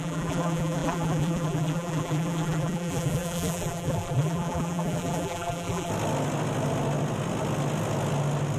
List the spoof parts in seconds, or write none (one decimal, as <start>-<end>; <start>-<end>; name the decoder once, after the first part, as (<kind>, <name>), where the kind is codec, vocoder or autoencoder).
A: 0.0-5.9 (vocoder, BigVGAN v2)